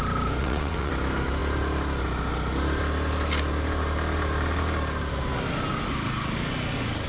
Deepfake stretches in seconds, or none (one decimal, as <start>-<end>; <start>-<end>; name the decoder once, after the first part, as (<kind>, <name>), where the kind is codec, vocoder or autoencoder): 0.4-0.9 (vocoder, WaveNeXt)